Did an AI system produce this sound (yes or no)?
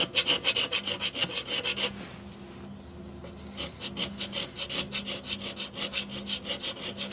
no